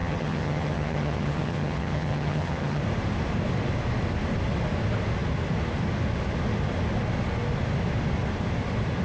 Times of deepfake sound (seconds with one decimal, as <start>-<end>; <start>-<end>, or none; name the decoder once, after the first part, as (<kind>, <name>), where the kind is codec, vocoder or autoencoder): 0.0-2.8 (vocoder, HiFi-GAN)